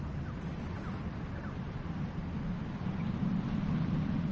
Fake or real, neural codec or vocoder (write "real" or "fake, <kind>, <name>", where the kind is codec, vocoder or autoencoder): real